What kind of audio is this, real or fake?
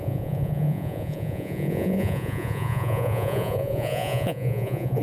fake